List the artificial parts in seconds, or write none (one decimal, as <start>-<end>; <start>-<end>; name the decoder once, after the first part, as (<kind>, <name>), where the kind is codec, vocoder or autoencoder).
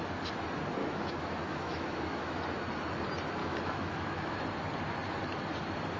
0.8-2.4 (autoencoder, DAC-VAE); 3.4-4.4